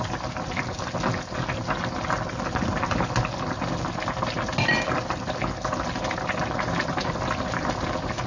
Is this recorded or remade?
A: recorded